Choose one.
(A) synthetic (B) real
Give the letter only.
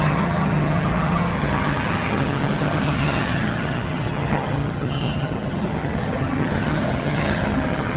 A